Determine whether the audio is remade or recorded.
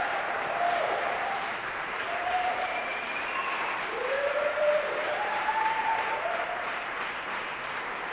remade